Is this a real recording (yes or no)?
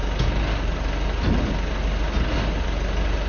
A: yes